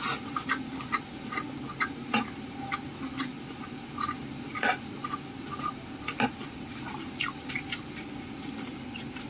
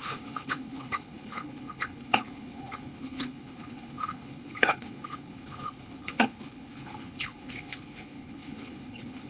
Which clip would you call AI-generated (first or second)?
second